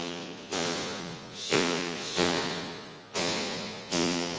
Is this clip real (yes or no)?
no